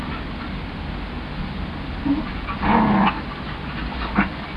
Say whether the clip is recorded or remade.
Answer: recorded